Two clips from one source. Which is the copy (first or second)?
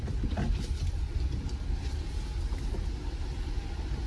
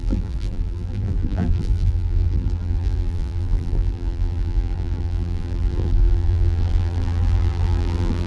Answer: second